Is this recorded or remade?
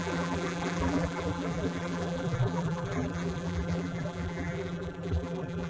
remade